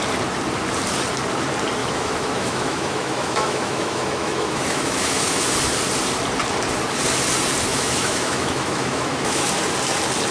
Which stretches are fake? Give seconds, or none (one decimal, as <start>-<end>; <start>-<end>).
1.8-5.4; 7.7-9.5